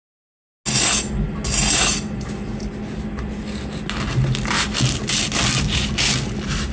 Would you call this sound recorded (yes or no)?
yes